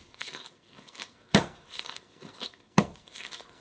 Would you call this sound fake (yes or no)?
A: yes